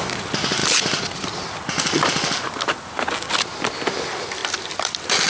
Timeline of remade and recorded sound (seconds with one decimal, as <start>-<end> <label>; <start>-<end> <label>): 0.0-4.4 recorded; 4.4-5.3 remade